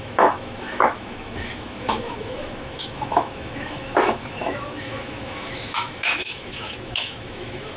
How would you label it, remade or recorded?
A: remade